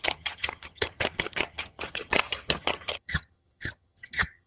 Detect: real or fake fake